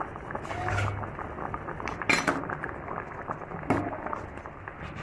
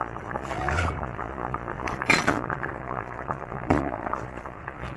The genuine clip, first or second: first